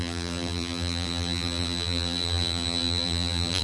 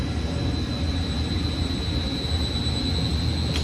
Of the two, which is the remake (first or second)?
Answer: first